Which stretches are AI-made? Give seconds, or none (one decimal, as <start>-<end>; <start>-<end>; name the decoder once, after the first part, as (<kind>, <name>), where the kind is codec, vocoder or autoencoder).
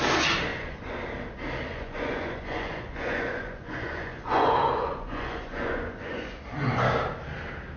0.5-1.0 (vocoder, Vocos); 1.7-6.4